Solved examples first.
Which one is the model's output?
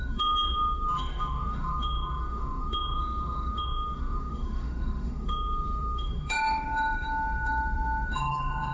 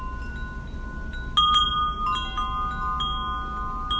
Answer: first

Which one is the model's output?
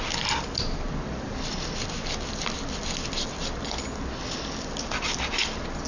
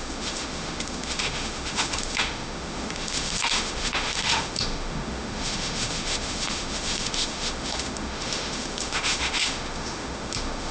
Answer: second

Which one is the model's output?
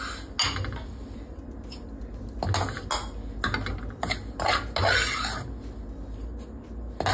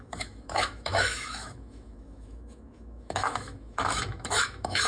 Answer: second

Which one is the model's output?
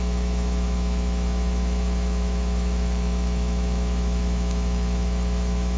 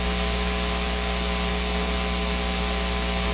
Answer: first